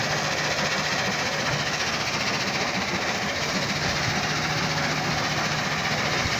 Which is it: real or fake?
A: real